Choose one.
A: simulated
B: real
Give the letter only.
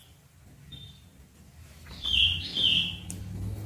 B